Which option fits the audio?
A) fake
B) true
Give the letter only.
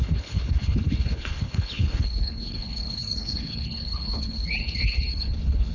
A